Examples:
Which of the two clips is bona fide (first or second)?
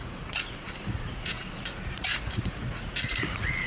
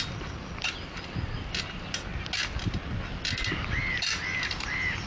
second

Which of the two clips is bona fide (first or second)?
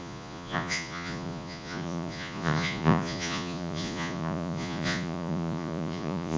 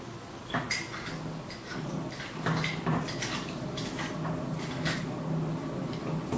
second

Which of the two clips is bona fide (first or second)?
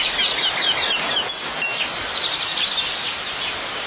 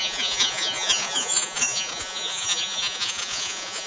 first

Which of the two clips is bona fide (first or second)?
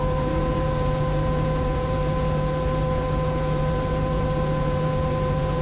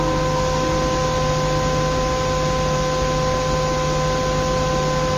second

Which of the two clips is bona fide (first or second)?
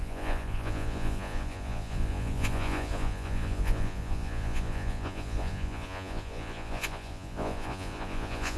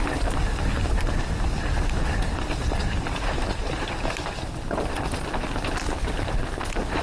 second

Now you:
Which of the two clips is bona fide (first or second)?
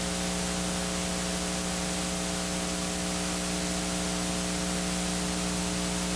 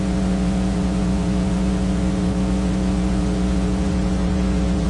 first